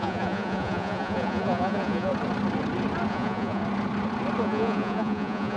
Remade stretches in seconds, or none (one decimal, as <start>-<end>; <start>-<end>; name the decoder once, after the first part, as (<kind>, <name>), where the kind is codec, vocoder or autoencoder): 0.0-2.1 (vocoder, Vocos); 3.1-3.6; 4.4-5.6